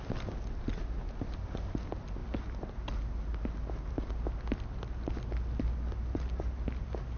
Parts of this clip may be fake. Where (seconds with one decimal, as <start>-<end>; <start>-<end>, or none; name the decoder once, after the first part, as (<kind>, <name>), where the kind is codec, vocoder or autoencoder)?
none